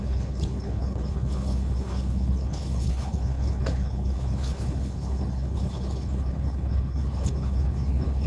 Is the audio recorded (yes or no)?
no